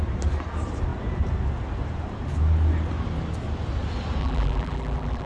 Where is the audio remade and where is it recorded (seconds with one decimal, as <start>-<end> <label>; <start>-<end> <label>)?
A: 0.0-4.2 recorded; 4.2-5.3 remade